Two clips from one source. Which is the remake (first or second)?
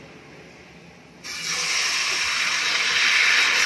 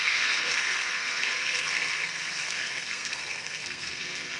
second